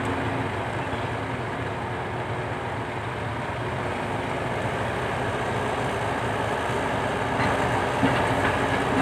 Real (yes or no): yes